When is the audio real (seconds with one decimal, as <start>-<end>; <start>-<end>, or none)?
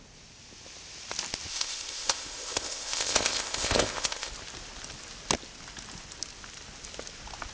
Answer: 0.0-1.5; 4.3-7.5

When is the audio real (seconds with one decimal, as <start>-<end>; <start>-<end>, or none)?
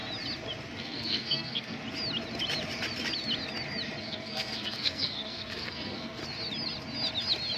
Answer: 0.0-0.8; 1.8-4.0; 6.2-7.6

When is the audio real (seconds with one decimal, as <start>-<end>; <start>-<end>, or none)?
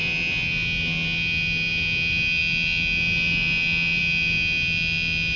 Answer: 0.0-5.4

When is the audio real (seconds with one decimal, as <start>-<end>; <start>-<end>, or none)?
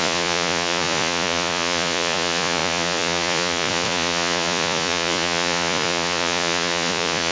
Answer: none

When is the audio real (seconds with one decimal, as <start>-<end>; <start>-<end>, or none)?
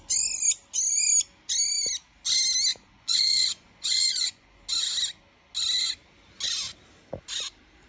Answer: 0.0-2.7; 4.6-7.9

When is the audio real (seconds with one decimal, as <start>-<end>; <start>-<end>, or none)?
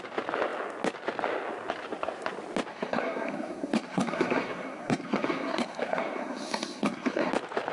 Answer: 0.0-2.7; 7.3-7.7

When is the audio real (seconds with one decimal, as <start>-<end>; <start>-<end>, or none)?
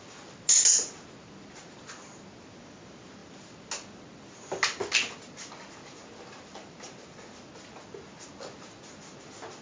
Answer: 0.0-9.6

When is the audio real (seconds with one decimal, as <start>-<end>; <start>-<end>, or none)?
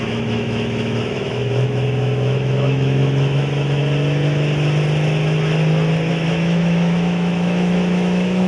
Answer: 3.8-6.1